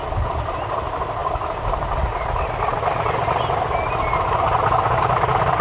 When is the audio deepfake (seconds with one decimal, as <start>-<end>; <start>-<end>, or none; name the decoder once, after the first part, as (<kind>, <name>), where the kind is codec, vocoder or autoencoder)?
none